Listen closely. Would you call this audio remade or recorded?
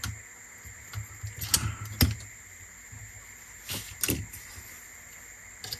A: recorded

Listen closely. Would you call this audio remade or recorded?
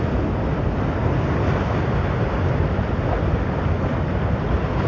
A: recorded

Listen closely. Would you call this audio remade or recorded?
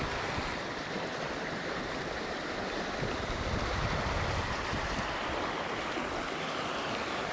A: remade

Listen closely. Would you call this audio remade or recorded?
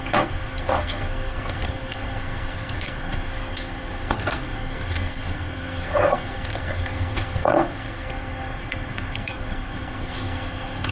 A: remade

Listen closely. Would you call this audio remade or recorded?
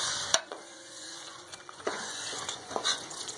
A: remade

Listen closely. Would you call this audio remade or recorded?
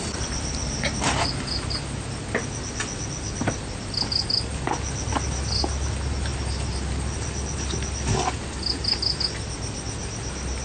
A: recorded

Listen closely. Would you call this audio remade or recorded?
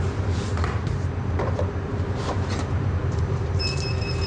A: remade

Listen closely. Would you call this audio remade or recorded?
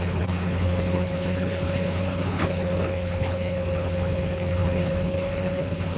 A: remade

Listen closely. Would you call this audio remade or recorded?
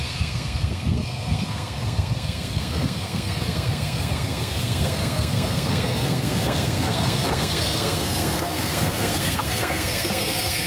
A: remade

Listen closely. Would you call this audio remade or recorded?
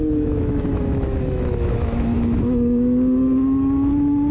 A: remade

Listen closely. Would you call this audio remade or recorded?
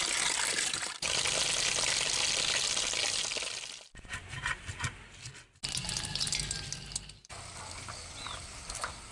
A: recorded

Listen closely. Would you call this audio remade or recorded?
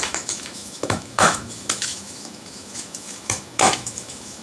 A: remade